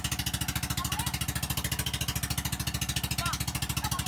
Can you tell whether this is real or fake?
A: real